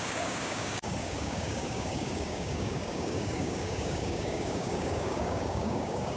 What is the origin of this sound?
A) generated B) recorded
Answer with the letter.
A